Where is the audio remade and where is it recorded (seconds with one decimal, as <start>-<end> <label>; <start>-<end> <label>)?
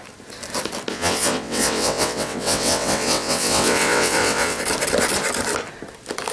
0.0-0.9 recorded; 0.9-4.6 remade; 4.6-6.3 recorded